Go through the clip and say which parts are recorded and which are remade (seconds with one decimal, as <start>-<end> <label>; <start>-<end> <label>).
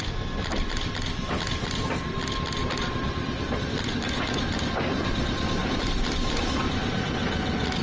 0.0-0.5 recorded; 0.5-1.7 remade; 1.7-5.6 recorded; 5.6-7.8 remade